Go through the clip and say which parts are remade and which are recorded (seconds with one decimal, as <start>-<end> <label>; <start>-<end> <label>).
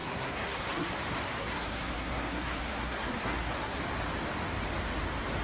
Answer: 0.0-0.9 remade; 0.9-1.4 recorded; 1.4-3.8 remade; 3.8-5.4 recorded